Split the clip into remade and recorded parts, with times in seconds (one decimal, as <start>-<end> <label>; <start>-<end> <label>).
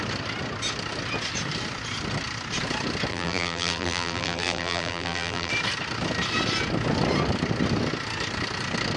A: 0.0-3.1 recorded; 3.1-5.5 remade; 5.5-9.0 recorded